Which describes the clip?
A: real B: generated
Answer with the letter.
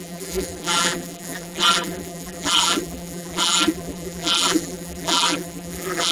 B